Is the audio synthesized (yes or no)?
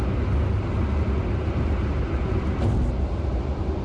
no